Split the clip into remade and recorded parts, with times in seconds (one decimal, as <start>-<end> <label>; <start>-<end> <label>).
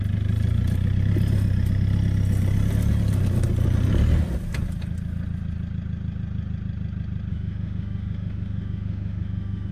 0.0-7.3 recorded; 7.3-9.7 remade